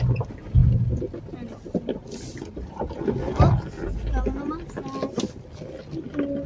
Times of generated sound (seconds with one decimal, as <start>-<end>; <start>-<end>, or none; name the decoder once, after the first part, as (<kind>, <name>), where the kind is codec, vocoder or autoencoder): none